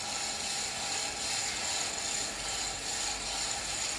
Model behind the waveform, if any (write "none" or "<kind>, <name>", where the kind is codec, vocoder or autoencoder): none